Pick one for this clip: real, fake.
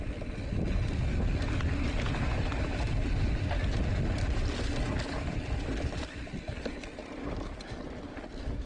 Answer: real